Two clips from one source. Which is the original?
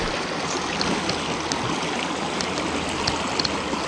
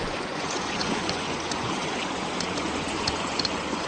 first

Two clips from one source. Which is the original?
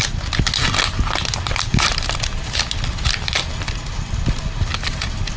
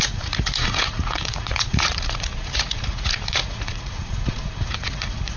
first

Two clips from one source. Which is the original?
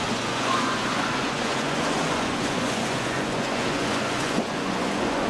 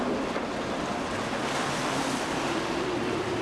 second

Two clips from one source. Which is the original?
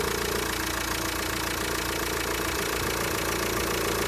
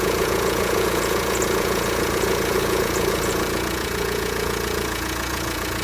first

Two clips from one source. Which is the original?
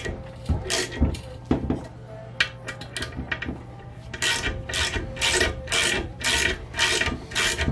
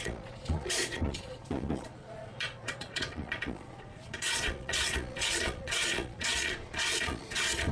first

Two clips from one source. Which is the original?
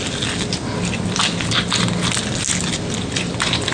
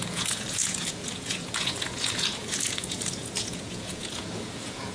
first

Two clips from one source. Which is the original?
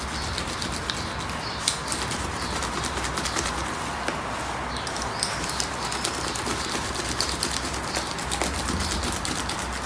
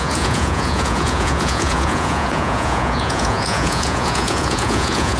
first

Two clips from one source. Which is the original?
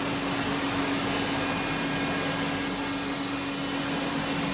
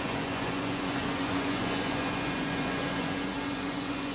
first